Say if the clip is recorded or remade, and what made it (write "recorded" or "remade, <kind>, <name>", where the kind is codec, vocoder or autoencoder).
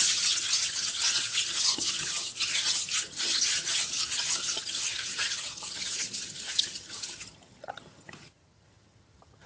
remade, vocoder, HiFi-GAN